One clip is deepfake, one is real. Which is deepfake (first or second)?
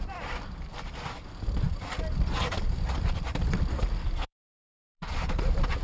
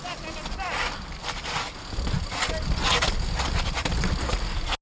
first